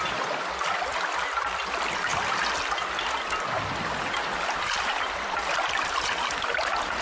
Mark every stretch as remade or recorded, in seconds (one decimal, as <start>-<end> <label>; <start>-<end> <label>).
0.0-7.0 recorded

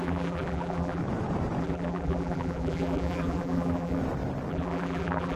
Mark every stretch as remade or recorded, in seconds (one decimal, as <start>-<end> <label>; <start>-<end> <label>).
0.0-1.0 remade; 1.0-1.6 recorded; 1.6-4.0 remade; 4.0-4.5 recorded; 4.5-5.4 remade

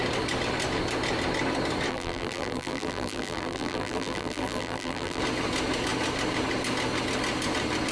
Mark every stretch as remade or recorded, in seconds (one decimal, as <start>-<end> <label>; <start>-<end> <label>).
0.0-1.9 recorded; 1.9-5.2 remade; 5.2-7.9 recorded

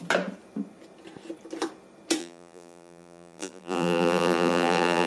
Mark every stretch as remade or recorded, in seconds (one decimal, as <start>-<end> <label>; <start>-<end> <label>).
0.0-2.2 recorded; 2.2-5.1 remade

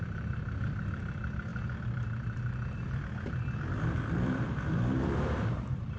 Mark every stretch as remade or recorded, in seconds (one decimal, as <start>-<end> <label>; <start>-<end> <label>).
0.0-6.0 remade